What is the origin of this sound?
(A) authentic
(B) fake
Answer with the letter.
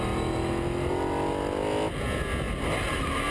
A